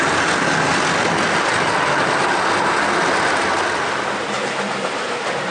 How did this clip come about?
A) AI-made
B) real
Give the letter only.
B